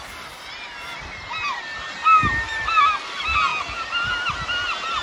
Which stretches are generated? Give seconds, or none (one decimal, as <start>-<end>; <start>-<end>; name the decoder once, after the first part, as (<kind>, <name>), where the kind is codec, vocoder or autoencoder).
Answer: none